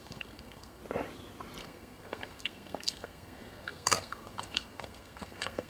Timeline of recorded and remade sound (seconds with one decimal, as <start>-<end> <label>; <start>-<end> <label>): 0.0-0.8 remade; 0.8-1.6 recorded; 1.6-5.7 remade